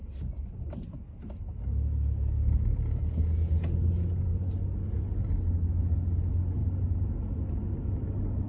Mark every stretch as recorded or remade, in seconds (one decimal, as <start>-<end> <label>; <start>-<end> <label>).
0.0-8.5 recorded